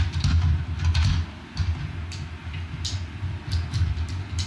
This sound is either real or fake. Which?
real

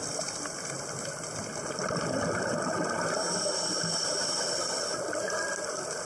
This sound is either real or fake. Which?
fake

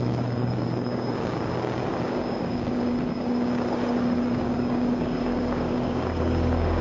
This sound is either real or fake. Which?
fake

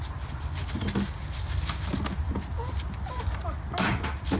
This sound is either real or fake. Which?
real